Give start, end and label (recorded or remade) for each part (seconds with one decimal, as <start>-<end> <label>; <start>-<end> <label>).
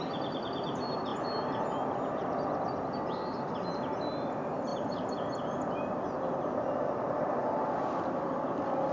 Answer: 0.0-8.9 recorded